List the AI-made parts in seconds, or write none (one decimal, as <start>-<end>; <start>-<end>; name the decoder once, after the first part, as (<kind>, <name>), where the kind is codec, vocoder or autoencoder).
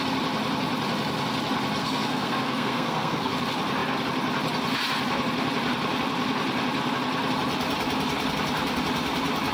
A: 1.8-3.3 (codec, SNAC)